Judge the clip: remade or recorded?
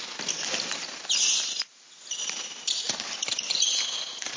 recorded